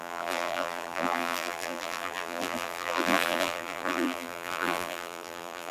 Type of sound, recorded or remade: remade